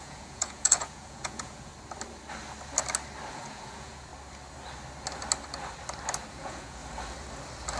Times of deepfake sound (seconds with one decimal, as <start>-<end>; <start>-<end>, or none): 0.0-1.7; 3.3-4.1; 6.3-6.8